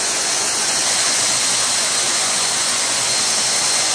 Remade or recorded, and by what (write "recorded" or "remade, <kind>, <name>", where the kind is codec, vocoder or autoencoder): remade, vocoder, Vocos